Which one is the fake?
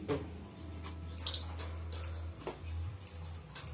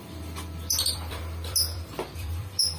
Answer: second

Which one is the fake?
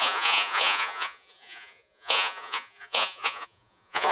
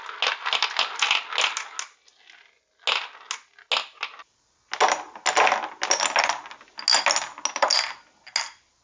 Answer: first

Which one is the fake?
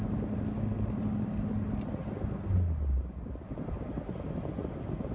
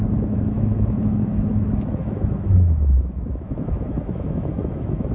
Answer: second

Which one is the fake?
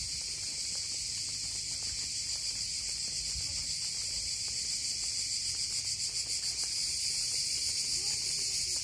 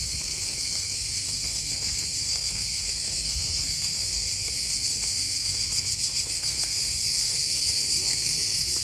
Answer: second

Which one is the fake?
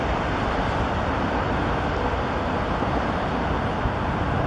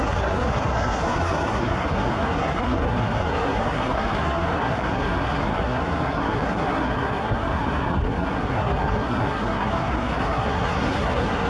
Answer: second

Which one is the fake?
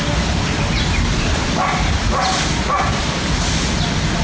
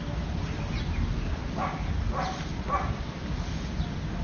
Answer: first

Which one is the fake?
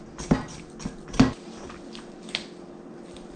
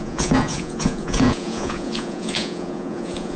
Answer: second